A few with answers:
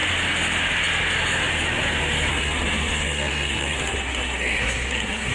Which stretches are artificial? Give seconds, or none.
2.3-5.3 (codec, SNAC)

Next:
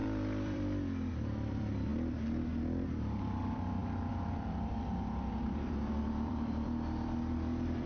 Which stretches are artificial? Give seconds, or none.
0.0-1.9 (vocoder, BigVGAN v2); 2.5-7.9